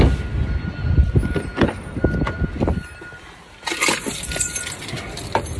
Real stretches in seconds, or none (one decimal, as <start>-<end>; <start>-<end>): 0.0-5.6